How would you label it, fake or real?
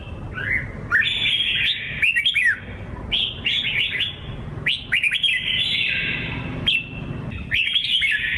real